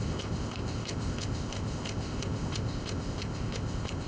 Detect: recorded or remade remade